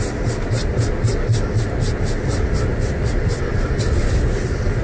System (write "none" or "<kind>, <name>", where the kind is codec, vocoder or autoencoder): none